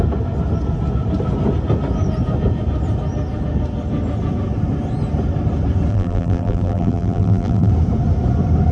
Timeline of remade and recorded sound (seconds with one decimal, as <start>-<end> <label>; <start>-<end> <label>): 0.0-5.9 recorded; 5.9-7.7 remade; 7.7-8.7 recorded